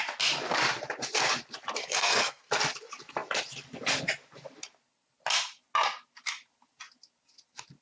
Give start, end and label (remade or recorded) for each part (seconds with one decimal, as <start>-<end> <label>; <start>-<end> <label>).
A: 0.0-1.8 recorded; 1.8-2.4 remade; 2.4-7.8 recorded